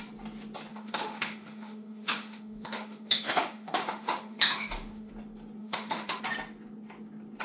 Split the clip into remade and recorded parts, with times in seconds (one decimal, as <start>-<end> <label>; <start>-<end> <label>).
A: 0.0-0.7 recorded; 0.7-5.1 remade; 5.1-5.6 recorded; 5.6-6.2 remade; 6.2-7.4 recorded